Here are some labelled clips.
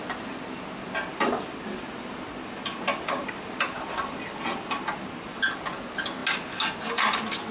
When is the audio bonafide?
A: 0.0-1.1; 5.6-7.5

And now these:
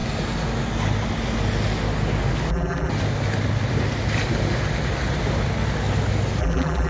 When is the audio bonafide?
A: 0.0-2.5; 2.9-6.4

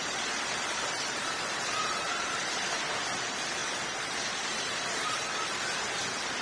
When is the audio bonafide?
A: 2.6-3.6; 5.6-6.4

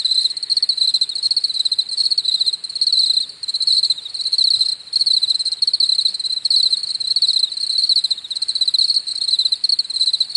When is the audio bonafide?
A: 0.0-1.4; 2.7-9.1; 9.7-10.4

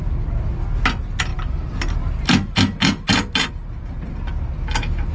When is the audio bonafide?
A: 0.0-1.3; 2.0-5.1

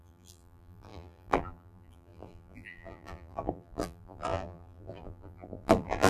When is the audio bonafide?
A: none